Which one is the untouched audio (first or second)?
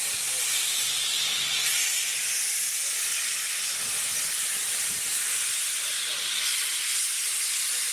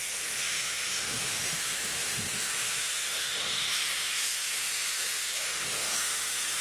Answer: first